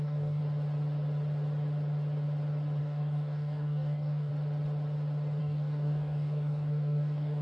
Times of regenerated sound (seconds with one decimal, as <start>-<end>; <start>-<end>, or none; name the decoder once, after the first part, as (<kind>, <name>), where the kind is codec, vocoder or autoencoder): 0.0-0.4 (codec, DAC); 2.8-4.3; 5.4-7.4